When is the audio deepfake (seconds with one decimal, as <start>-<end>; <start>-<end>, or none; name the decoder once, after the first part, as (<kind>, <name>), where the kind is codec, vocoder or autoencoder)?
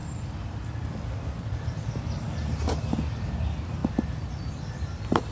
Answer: none